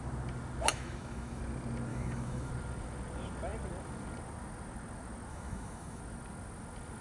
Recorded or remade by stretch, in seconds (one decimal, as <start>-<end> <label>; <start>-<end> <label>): 0.0-0.7 recorded; 0.7-1.4 remade; 1.4-1.9 recorded; 1.9-2.5 remade; 2.5-5.3 recorded; 5.3-6.0 remade; 6.0-7.0 recorded